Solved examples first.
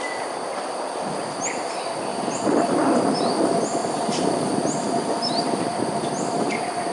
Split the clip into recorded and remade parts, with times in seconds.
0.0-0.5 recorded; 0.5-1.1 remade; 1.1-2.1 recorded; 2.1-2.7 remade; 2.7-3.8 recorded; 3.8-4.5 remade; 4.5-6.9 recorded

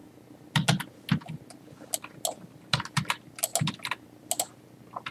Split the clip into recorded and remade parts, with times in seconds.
0.0-5.1 recorded

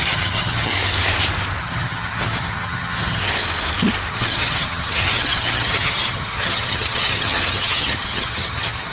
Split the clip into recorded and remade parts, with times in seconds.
0.0-0.7 remade; 0.7-1.6 recorded; 1.6-3.2 remade; 3.2-4.1 recorded; 4.1-8.9 remade

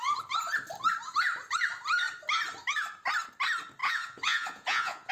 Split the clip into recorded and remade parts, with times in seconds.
0.0-3.8 recorded; 3.8-5.1 remade